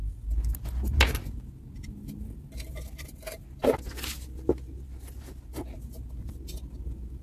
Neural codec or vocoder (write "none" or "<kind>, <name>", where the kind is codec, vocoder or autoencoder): none